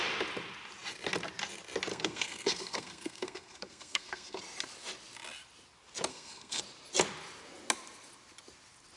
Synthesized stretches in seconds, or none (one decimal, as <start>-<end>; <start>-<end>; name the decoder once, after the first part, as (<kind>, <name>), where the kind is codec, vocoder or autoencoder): 1.9-4.4 (codec, SNAC); 6.1-6.6